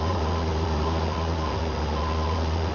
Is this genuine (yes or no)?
no